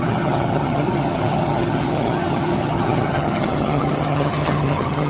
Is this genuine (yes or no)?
no